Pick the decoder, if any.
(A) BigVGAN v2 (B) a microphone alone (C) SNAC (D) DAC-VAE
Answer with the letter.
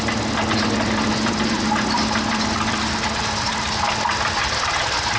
B